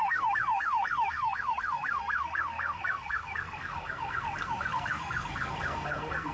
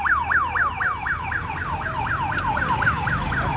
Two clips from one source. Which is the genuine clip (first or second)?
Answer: second